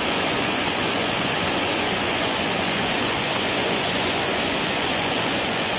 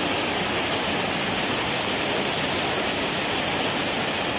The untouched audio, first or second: second